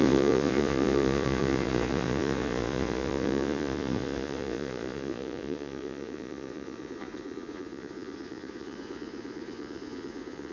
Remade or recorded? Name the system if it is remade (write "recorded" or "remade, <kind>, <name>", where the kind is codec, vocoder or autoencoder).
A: remade, vocoder, Vocos